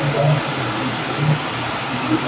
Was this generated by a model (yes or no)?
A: no